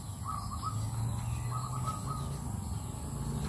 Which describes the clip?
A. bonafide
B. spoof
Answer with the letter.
A